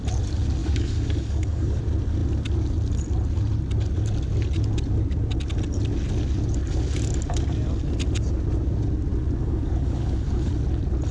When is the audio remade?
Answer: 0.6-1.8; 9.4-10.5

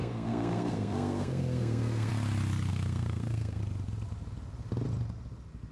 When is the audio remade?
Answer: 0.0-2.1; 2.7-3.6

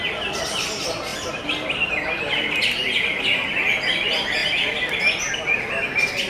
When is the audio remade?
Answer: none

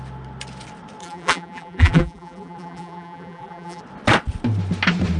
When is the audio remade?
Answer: 1.0-3.8

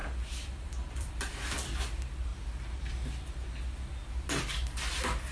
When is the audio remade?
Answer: 0.0-1.3

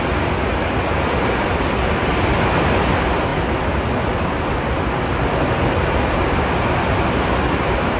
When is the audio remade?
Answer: none

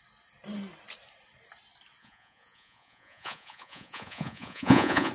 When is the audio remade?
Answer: 2.0-5.1